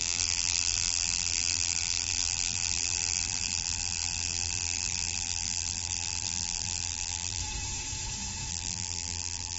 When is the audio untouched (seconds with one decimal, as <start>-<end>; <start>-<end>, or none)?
7.4-8.5